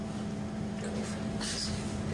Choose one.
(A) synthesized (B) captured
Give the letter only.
B